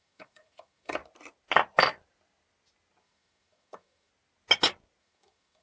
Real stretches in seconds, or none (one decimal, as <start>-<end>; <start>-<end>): 1.0-3.0; 4.1-5.0